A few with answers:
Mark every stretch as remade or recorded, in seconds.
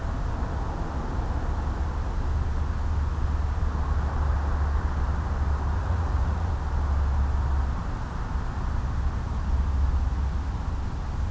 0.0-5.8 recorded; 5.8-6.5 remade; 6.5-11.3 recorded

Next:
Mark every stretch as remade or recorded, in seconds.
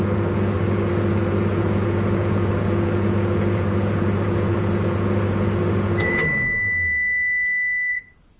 0.0-6.2 remade; 6.2-7.9 recorded; 7.9-8.4 remade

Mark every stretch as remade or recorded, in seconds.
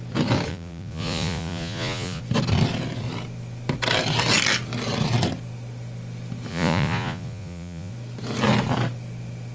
0.0-0.5 recorded; 0.5-2.2 remade; 2.2-6.5 recorded; 6.5-7.9 remade; 7.9-9.5 recorded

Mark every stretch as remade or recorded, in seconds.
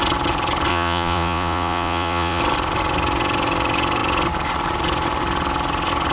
0.0-0.7 recorded; 0.7-2.4 remade; 2.4-6.1 recorded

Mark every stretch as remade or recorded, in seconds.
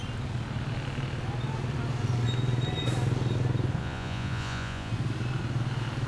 0.0-3.8 recorded; 3.8-4.9 remade; 4.9-6.1 recorded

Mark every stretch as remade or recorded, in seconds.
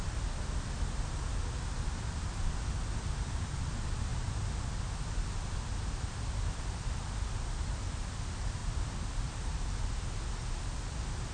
0.0-11.3 recorded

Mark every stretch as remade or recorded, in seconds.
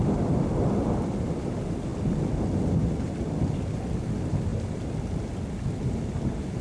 0.0-6.6 recorded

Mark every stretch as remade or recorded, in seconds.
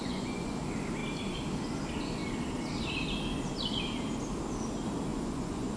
0.0-0.6 remade; 0.6-5.1 recorded; 5.1-5.8 remade